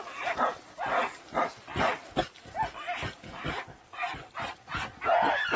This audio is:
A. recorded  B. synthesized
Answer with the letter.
A